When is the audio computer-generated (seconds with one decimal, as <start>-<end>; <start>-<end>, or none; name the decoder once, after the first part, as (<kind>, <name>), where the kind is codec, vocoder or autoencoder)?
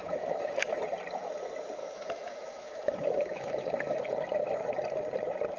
0.0-0.8 (autoencoder, DAC-VAE); 1.8-4.0